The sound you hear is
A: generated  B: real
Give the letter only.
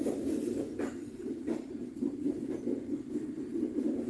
A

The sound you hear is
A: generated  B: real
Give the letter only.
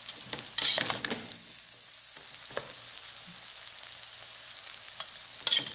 B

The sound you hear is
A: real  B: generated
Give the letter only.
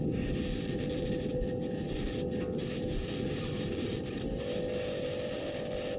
A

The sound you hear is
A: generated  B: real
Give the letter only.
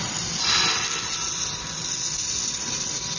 B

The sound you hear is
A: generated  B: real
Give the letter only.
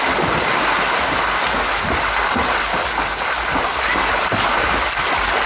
B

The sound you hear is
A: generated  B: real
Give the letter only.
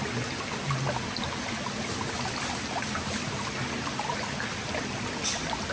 B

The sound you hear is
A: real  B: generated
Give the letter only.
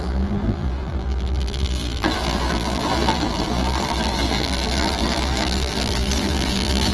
B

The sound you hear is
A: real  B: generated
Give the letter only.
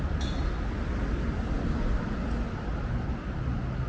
A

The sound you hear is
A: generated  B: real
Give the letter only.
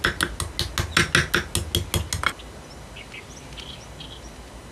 B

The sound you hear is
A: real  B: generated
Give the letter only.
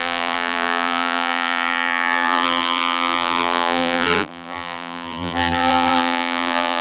B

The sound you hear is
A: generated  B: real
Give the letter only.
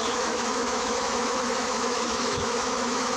A